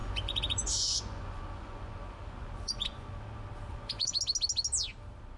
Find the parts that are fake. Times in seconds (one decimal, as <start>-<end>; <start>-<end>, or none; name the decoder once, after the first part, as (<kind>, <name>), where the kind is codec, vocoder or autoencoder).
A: 0.0-3.2 (vocoder, Vocos); 3.7-4.2